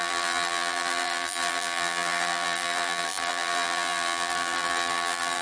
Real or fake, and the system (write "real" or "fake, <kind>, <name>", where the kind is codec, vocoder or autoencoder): fake, vocoder, BigVGAN v2